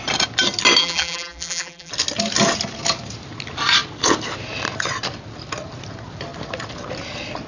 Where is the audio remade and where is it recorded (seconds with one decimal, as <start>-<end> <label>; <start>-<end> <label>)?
0.0-0.8 recorded; 0.8-1.9 remade; 1.9-7.5 recorded